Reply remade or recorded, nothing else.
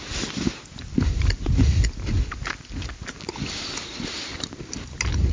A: recorded